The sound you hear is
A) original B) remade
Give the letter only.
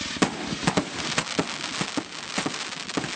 A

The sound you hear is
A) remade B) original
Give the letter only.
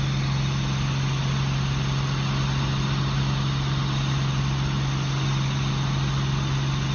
B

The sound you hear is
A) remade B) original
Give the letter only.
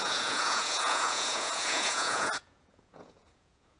A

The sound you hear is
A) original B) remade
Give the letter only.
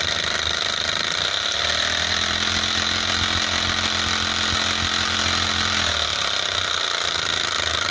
A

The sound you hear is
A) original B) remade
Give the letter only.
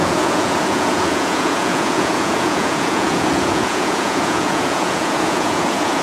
B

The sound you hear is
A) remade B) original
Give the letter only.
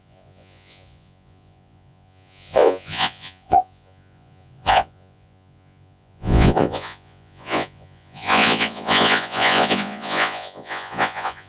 A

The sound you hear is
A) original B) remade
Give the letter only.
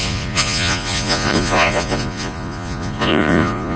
B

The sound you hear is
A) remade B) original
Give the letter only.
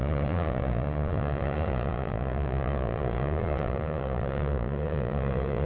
A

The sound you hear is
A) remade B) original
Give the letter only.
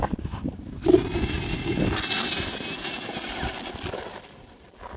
B